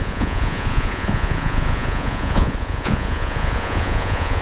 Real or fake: fake